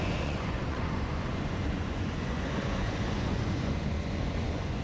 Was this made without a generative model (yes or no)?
no